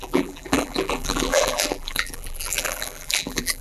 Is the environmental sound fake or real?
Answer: fake